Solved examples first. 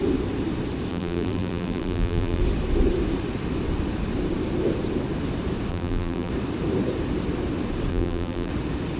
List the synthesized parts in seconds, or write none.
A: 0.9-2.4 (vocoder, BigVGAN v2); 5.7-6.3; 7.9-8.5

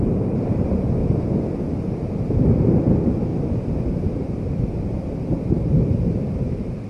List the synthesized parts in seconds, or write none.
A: 0.0-1.0 (vocoder, BigVGAN v2); 2.6-3.3; 3.9-6.9